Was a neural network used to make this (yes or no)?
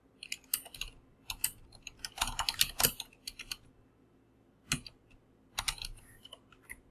no